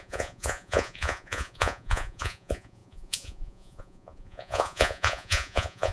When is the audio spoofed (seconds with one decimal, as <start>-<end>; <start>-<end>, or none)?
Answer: 0.0-5.9